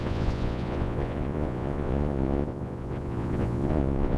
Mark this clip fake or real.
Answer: fake